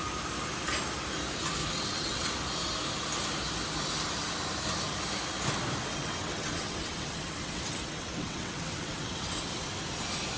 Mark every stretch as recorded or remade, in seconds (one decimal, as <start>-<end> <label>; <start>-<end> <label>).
0.0-1.6 recorded; 1.6-2.3 remade; 2.3-5.9 recorded; 5.9-9.7 remade; 9.7-10.4 recorded